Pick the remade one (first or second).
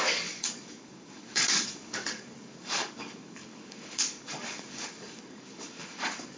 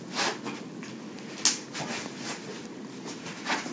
first